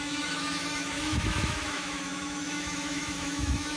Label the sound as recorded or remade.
remade